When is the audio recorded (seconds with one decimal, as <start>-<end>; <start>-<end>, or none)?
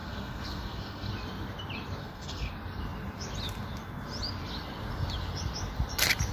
1.1-2.0; 2.5-6.3